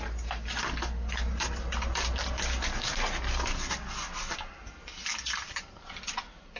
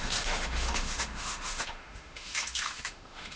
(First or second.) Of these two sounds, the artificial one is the second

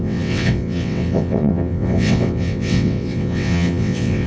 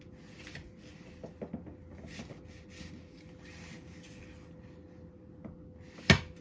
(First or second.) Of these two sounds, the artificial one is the first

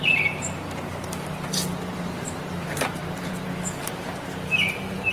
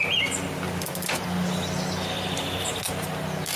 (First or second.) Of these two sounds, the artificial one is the first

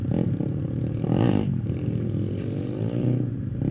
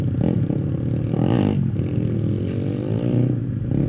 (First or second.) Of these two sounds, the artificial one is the first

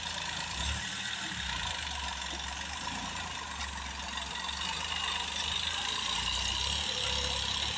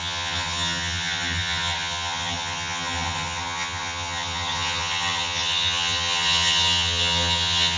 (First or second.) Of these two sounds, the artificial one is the second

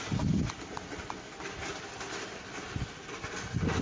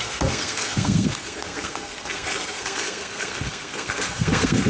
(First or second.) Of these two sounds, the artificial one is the second